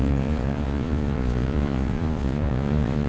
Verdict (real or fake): fake